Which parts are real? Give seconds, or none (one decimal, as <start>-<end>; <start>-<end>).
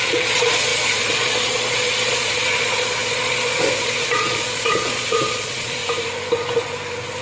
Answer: 5.8-7.2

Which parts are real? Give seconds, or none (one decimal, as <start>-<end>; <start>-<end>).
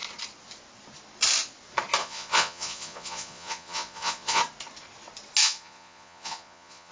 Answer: 0.0-2.0; 4.4-5.4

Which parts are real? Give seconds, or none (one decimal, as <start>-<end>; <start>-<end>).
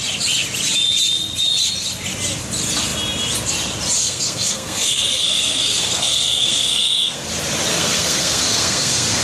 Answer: 0.0-4.0; 7.3-7.7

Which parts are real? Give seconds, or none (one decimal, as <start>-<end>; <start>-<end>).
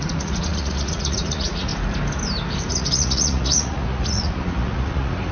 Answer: 1.7-2.7